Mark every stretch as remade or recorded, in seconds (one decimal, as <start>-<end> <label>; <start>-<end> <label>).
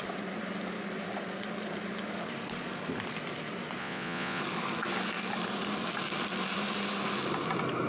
0.0-3.8 recorded; 3.8-4.4 remade; 4.4-7.9 recorded